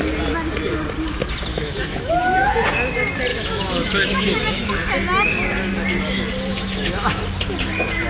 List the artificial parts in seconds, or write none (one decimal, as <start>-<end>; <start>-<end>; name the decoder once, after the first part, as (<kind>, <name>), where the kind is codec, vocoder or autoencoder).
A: 1.5-2.2 (autoencoder, DAC-VAE); 3.3-4.7; 6.5-7.2

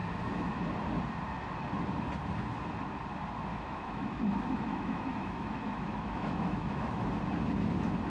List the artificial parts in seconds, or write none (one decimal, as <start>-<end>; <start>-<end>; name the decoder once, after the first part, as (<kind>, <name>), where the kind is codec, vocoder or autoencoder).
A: 0.0-0.6 (autoencoder, DAC-VAE); 3.5-7.0

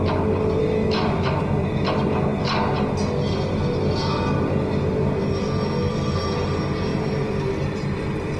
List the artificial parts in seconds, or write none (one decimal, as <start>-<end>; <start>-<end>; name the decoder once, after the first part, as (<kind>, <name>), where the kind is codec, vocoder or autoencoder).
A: 0.6-1.4 (autoencoder, DAC-VAE)

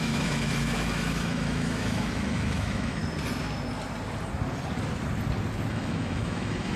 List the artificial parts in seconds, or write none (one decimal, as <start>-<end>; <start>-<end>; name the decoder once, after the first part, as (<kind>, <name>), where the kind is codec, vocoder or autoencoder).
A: 0.0-3.0 (autoencoder, DAC-VAE); 5.7-6.8

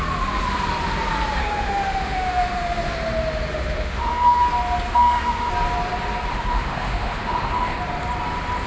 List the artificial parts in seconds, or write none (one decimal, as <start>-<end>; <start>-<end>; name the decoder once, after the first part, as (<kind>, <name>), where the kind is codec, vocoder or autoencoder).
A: 1.4-2.9 (autoencoder, DAC-VAE); 3.5-4.4; 4.9-5.5; 6.3-7.8